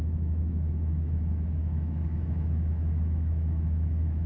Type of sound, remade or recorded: remade